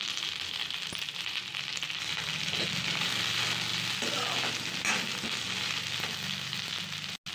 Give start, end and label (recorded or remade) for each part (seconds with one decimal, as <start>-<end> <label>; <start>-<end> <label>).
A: 0.0-7.3 recorded